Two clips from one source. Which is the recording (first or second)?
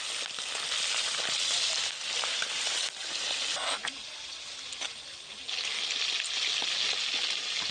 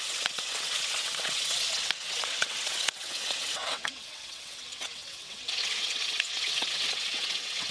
first